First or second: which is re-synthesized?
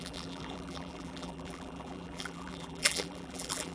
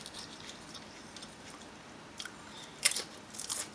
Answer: first